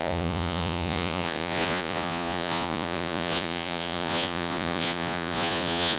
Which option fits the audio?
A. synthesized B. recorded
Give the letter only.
A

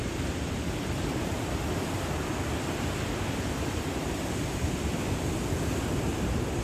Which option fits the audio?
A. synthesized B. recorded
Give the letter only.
A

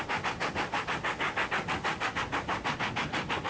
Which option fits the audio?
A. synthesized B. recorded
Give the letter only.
B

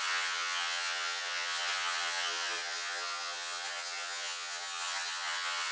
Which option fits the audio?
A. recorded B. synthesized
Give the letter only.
B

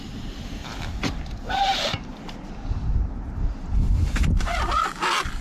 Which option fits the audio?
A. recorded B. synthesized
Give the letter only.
A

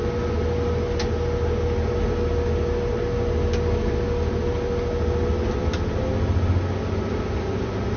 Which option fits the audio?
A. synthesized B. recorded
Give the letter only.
B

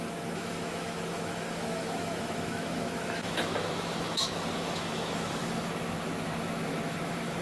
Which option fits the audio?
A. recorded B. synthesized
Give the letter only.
B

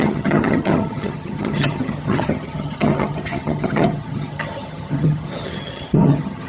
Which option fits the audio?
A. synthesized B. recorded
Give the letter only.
A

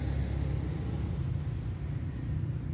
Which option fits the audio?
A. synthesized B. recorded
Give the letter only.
B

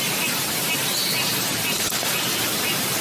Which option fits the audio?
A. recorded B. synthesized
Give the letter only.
B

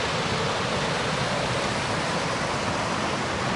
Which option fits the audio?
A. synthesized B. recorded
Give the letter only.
B